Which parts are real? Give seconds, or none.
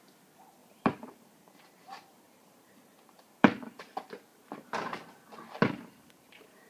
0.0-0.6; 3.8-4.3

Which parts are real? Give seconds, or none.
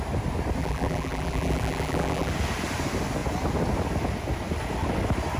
0.0-0.6; 2.3-5.4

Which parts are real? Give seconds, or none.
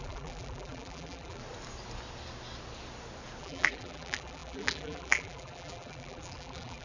1.4-3.4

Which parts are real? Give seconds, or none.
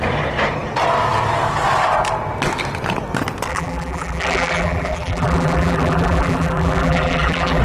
0.0-3.5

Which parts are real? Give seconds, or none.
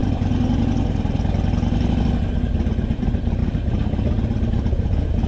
0.0-2.5; 3.4-4.5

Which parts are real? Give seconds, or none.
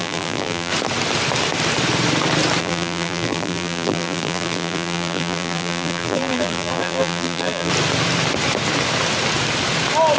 0.7-2.6; 7.7-10.2